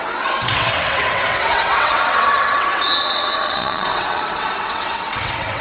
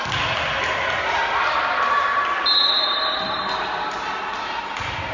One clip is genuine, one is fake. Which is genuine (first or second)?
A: second